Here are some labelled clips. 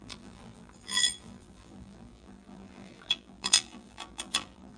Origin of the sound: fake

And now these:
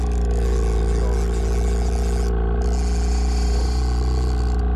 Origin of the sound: real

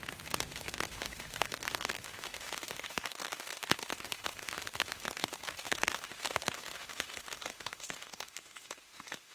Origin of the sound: fake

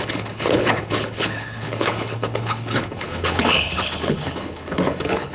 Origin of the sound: fake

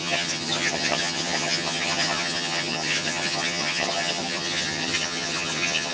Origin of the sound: fake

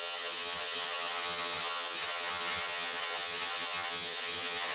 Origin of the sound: fake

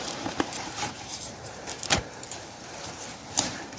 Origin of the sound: fake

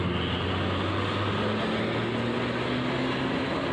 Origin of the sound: real